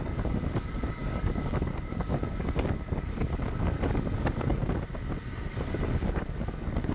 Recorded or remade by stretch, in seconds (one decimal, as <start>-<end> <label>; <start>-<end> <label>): 0.0-4.6 remade; 4.6-5.5 recorded; 5.5-6.9 remade